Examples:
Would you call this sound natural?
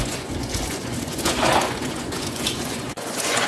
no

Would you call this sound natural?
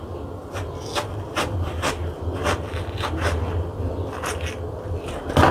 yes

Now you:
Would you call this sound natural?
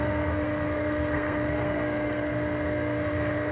no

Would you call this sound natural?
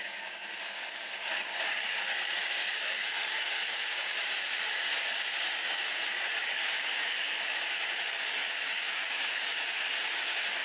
no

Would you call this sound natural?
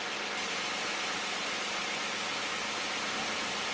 yes